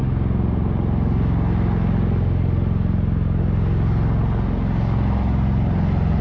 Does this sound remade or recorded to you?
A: recorded